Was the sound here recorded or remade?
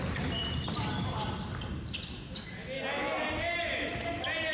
recorded